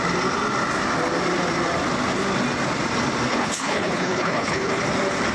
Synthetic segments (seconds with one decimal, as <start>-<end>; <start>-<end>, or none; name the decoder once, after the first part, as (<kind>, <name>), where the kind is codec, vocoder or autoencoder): 3.3-4.8 (codec, HILCodec)